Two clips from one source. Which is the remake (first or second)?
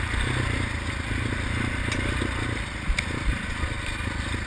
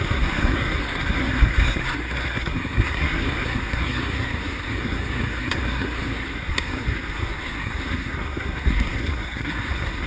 second